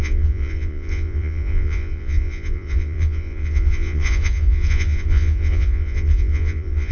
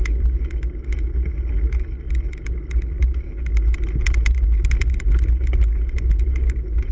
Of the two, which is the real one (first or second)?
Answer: second